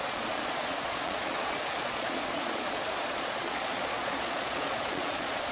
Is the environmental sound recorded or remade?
remade